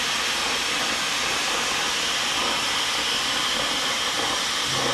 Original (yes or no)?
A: yes